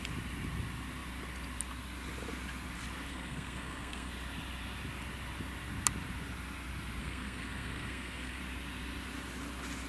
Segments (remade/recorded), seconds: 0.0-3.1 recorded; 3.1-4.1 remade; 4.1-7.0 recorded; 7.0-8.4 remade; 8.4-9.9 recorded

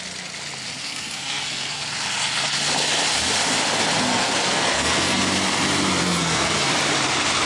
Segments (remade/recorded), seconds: 0.0-0.8 recorded; 0.8-1.8 remade; 1.8-4.1 recorded; 4.1-5.2 remade; 5.2-6.0 recorded; 6.0-6.7 remade; 6.7-7.5 recorded

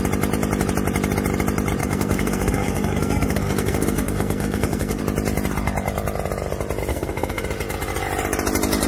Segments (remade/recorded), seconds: 0.0-1.8 recorded; 1.8-5.0 remade; 5.0-6.9 recorded; 6.9-7.4 remade; 7.4-8.9 recorded

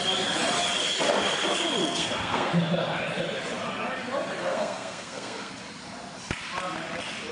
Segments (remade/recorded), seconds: 0.0-1.8 recorded; 1.8-2.5 remade; 2.5-4.4 recorded; 4.4-5.5 remade; 5.5-7.3 recorded

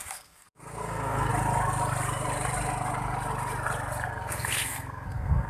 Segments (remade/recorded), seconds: 0.0-1.3 remade; 1.3-4.1 recorded; 4.1-5.5 remade

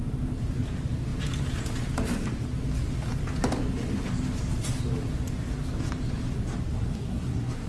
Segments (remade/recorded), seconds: 0.0-6.7 recorded; 6.7-7.7 remade

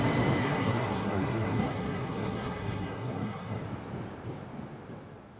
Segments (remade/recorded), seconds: 0.0-0.4 recorded; 0.4-3.6 remade; 3.6-5.4 recorded